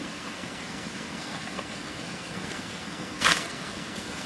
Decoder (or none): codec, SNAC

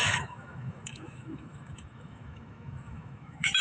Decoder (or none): autoencoder, DAC-VAE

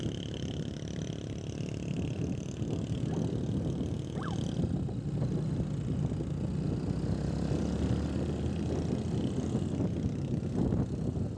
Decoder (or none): none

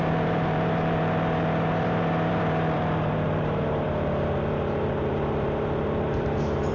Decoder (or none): vocoder, BigVGAN v2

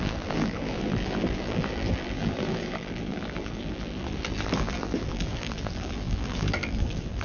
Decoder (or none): vocoder, BigVGAN v2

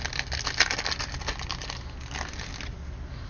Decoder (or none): none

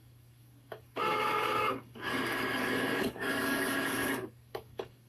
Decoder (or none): codec, DAC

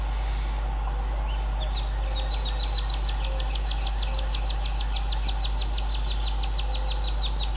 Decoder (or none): none